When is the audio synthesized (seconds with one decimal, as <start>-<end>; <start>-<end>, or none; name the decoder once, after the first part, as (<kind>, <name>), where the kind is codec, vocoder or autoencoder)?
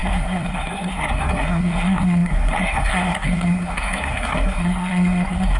0.0-5.6 (codec, SNAC)